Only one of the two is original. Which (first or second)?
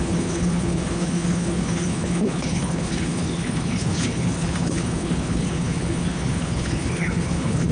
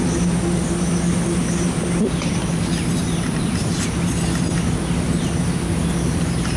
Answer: second